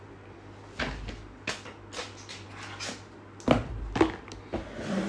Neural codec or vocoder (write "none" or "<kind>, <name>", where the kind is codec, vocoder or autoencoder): none